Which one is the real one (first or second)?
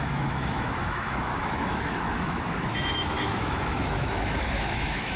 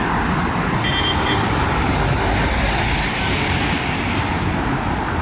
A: second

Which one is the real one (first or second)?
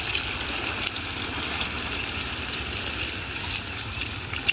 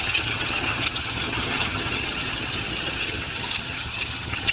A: first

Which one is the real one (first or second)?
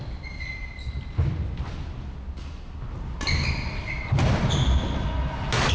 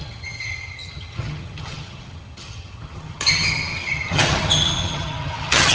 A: first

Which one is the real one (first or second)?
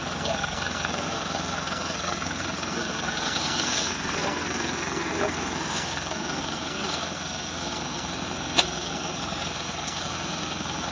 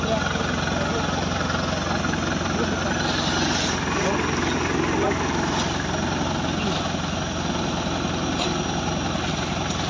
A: second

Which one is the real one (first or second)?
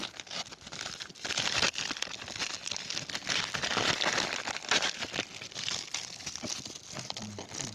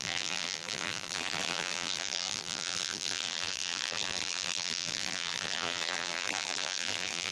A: first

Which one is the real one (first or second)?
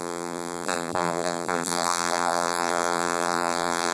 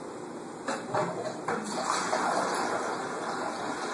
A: second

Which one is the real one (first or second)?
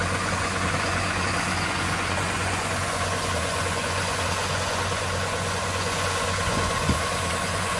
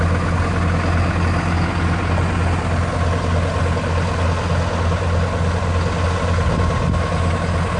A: second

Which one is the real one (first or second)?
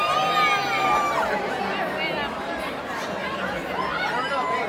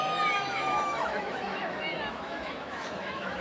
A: first